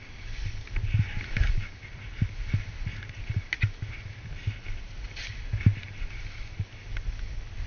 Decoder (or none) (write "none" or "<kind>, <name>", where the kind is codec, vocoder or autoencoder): none